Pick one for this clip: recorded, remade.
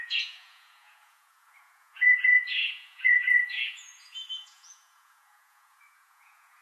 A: remade